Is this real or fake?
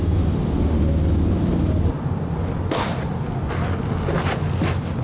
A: real